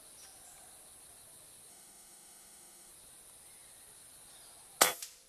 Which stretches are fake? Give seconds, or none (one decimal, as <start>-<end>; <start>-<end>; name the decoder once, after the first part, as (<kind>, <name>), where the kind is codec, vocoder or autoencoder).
1.7-2.9 (autoencoder, DAC-VAE)

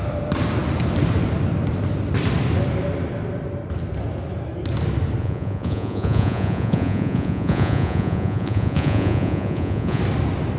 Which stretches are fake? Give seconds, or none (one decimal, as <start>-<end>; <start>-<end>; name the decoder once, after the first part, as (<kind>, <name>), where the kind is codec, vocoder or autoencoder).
5.2-10.0 (vocoder, Vocos)

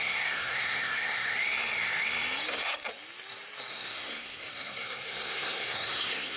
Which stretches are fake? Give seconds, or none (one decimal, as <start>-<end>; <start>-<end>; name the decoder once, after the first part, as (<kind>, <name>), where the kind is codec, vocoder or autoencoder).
0.0-1.4 (codec, SNAC); 2.5-2.9; 3.7-6.4

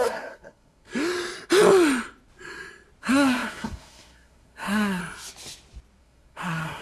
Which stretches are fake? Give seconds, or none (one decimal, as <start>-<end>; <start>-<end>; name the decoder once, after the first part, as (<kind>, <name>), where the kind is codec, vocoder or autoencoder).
0.0-0.9 (codec, SNAC); 3.0-5.0; 6.0-6.8

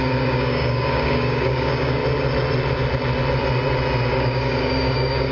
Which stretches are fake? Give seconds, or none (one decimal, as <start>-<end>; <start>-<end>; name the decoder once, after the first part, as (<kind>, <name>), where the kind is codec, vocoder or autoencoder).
0.0-2.0 (codec, DAC); 4.1-5.3

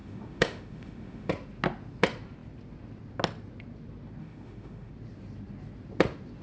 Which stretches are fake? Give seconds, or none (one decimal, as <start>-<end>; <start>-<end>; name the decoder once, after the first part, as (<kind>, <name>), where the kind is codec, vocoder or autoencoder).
0.0-1.3 (autoencoder, DAC-VAE); 4.2-4.9

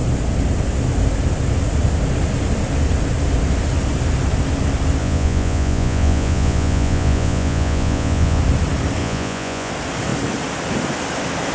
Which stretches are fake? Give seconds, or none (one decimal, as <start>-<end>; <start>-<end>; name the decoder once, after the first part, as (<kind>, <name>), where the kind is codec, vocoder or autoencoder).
5.0-8.4 (vocoder, Vocos); 9.0-9.7

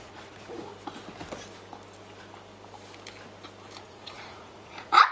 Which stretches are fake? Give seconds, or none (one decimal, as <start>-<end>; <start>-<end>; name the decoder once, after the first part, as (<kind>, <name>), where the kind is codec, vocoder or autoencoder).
0.0-0.7 (vocoder, Vocos); 3.8-5.1